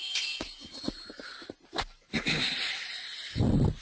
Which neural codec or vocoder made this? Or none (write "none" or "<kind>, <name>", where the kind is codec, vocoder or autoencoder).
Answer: none